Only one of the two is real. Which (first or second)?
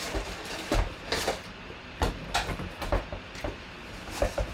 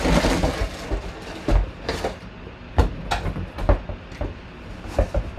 second